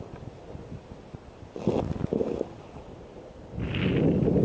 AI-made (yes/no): no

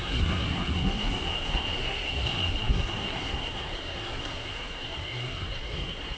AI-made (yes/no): yes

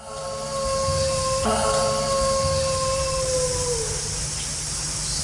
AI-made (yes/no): no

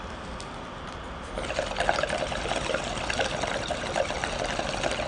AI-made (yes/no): no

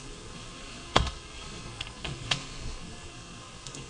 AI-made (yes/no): yes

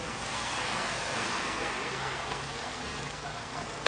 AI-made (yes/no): yes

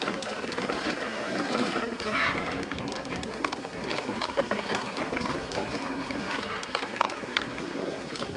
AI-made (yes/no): yes